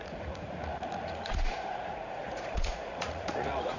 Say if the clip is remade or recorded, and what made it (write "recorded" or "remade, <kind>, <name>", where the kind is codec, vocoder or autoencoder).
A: remade, vocoder, Vocos